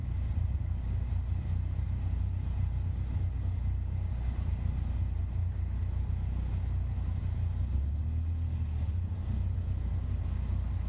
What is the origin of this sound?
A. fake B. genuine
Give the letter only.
B